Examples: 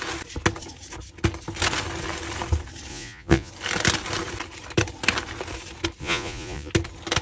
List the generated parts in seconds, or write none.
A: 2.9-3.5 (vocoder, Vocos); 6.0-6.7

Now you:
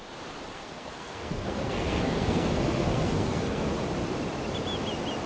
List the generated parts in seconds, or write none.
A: 0.5-3.7 (codec, SNAC)

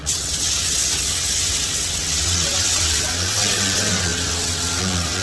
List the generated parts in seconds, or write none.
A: 0.0-5.2 (vocoder, WaveNeXt)

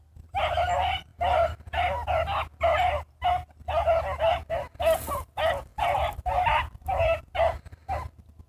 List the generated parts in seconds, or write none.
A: none